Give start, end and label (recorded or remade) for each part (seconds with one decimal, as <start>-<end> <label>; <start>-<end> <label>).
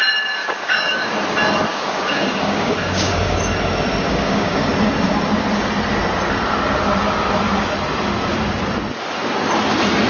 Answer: 0.0-0.4 recorded; 0.4-1.1 remade; 1.1-1.7 recorded; 1.7-3.4 remade; 3.4-4.0 recorded; 4.0-4.7 remade; 4.7-10.1 recorded